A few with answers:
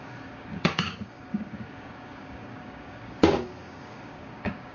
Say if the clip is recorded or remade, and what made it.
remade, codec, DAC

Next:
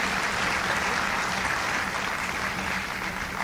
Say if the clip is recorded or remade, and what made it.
remade, vocoder, BigVGAN v2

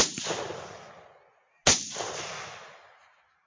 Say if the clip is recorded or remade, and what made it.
recorded